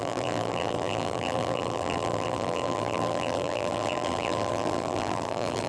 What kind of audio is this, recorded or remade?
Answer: remade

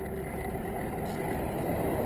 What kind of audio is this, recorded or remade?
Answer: recorded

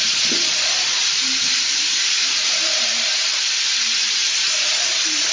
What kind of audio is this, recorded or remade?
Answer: remade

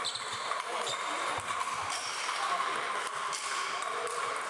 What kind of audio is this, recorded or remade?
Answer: recorded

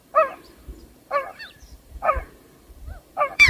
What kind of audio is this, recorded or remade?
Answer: remade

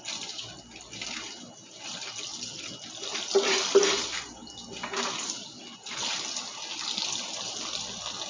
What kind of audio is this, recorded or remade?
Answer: recorded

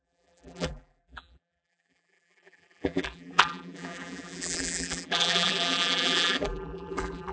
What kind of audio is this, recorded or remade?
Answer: remade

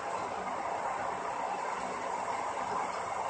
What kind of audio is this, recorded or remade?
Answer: recorded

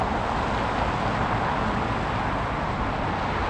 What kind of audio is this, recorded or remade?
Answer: recorded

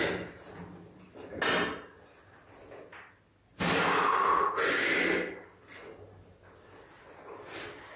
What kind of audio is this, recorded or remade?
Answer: recorded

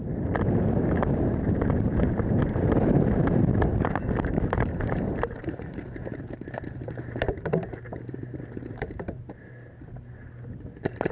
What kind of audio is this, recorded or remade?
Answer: remade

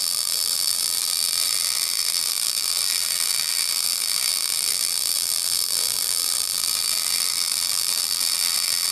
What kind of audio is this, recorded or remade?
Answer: remade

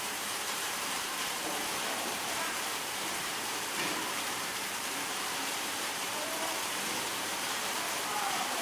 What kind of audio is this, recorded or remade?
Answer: remade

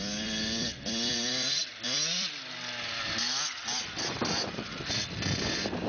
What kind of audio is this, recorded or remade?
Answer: remade